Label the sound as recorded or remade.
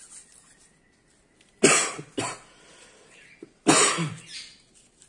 recorded